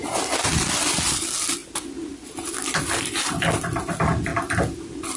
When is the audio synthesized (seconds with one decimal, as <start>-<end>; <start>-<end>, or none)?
none